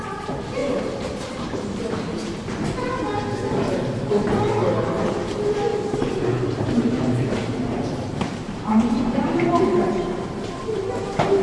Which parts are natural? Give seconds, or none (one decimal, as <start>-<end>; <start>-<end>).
0.0-0.6; 2.5-5.7; 9.6-11.4